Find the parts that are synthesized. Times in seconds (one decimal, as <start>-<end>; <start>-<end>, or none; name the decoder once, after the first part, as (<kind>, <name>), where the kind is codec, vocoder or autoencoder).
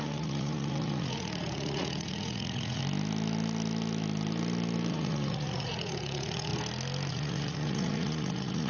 0.0-2.8 (vocoder, Vocos); 4.9-6.5; 7.1-8.7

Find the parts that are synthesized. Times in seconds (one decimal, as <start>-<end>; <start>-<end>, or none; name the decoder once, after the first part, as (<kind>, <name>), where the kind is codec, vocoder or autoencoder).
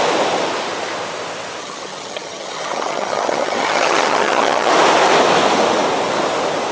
1.6-4.7 (vocoder, HiFi-GAN)